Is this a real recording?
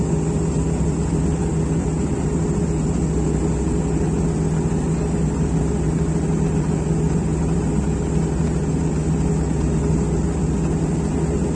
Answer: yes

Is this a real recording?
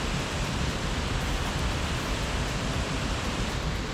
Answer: yes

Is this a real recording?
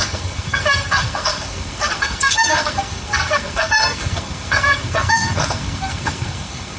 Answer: no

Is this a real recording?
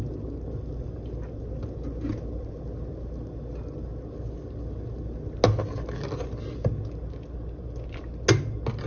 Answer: yes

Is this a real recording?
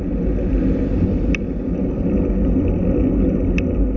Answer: yes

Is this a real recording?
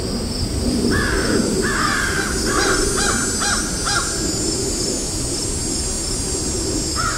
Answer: yes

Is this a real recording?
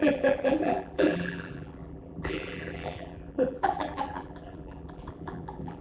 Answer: no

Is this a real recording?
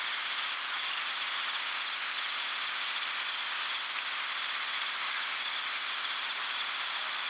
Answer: yes